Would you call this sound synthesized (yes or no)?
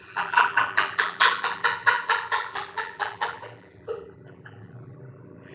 yes